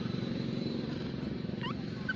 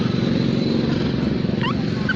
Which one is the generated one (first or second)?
first